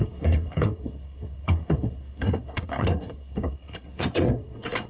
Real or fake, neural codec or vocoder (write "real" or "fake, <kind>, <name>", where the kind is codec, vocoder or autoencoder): fake, codec, SNAC